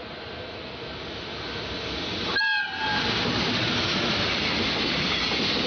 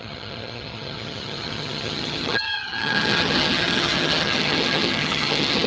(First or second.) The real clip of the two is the first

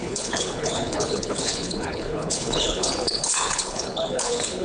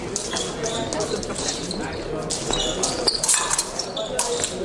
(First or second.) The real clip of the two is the second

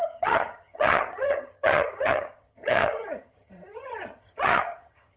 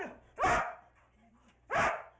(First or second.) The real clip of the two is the second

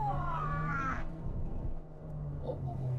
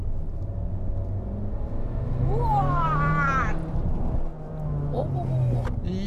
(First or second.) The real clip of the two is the second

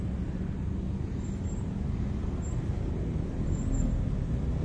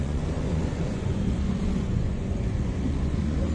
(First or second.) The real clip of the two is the first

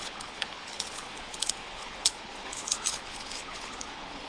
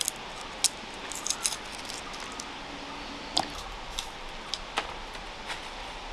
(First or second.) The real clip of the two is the second